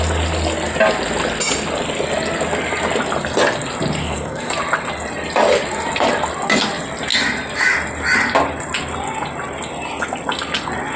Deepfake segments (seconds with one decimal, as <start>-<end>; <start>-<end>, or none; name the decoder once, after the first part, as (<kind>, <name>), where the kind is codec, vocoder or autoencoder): 4.0-4.5 (codec, SNAC)